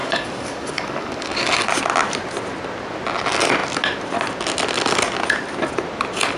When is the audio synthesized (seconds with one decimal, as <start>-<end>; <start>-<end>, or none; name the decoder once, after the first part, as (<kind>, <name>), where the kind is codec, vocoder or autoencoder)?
0.0-1.7 (codec, DAC)